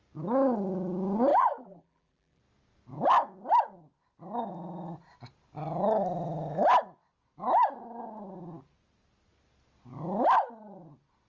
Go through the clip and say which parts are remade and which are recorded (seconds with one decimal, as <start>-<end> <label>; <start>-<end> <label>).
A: 0.0-1.3 recorded; 1.3-2.4 remade; 2.4-11.3 recorded